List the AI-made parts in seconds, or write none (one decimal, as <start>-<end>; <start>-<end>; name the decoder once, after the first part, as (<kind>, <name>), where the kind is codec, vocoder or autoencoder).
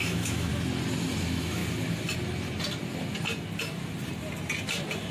0.0-0.5 (autoencoder, DAC-VAE); 1.2-1.6